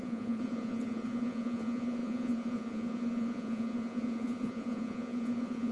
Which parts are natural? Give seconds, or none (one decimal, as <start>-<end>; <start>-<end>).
none